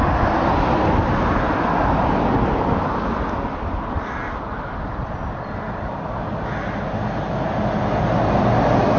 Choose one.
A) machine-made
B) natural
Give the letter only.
B